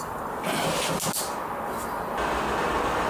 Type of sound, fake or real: real